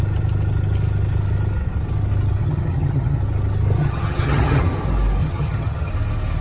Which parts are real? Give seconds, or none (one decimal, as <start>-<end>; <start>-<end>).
0.0-2.4; 3.2-3.8; 4.6-5.2; 5.9-6.4